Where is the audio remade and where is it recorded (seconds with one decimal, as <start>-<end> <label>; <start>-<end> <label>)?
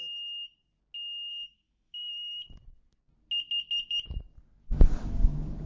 0.0-1.3 recorded; 1.3-2.1 remade; 2.1-5.7 recorded